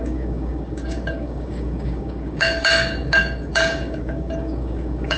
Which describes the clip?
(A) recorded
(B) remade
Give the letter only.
B